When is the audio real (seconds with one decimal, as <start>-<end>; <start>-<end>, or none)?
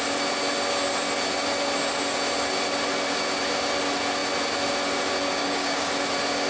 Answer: 0.0-5.4; 5.9-6.5